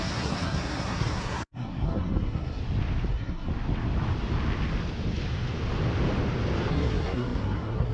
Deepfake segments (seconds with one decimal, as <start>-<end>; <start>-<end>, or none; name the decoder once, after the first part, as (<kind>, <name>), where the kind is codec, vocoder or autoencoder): 0.0-2.6 (codec, SNAC); 3.1-3.5; 6.7-7.9